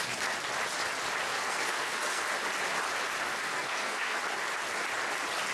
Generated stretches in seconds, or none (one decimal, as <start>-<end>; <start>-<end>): 1.3-2.2; 3.3-4.2